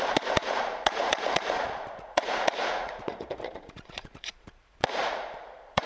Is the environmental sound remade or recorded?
remade